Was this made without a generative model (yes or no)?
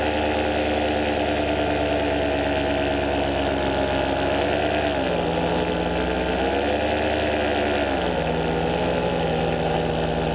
yes